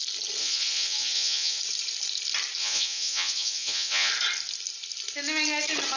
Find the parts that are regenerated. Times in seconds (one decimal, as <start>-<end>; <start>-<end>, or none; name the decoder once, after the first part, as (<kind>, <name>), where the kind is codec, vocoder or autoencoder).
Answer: 0.4-1.6 (vocoder, Vocos); 2.6-4.1